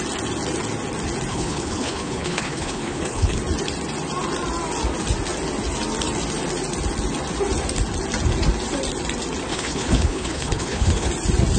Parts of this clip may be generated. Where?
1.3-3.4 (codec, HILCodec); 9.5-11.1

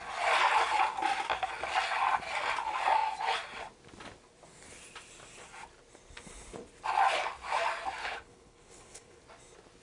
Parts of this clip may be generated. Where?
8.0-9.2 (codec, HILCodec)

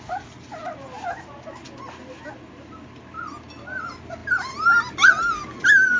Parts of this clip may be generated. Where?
none

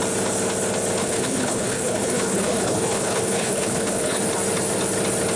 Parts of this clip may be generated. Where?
1.0-4.2 (codec, HILCodec)